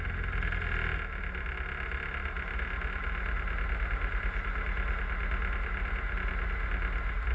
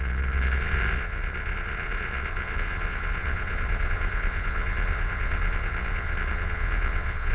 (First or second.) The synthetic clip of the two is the second